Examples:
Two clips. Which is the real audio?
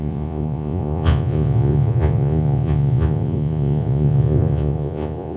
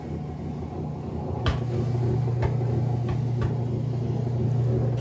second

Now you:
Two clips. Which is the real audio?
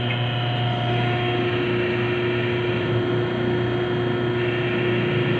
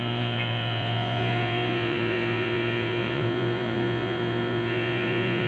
first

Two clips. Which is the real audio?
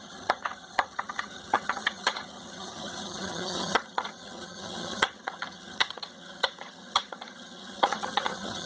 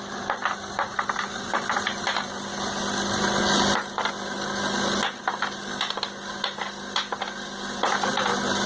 second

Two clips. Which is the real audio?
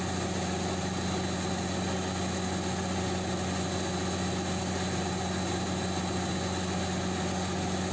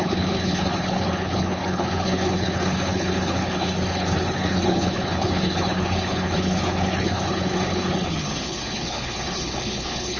first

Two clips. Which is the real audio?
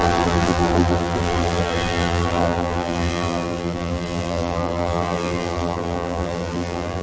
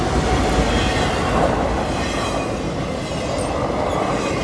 second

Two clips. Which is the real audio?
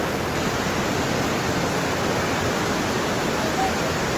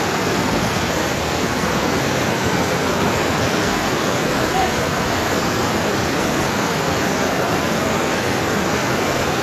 first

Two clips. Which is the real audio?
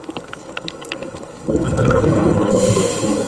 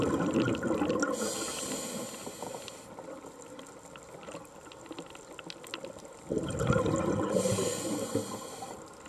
second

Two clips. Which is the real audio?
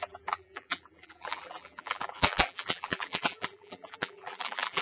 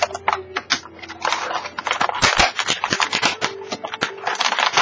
second